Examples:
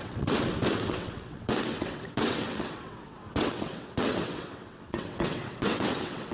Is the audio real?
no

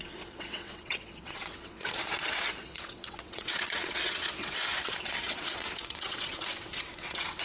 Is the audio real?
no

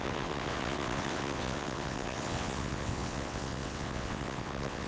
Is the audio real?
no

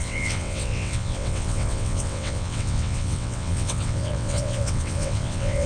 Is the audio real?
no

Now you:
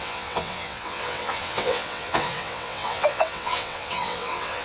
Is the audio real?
no